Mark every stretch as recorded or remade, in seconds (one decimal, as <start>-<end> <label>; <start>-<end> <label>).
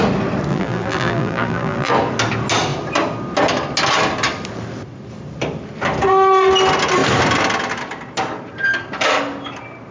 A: 0.0-0.5 recorded; 0.5-1.9 remade; 1.9-9.9 recorded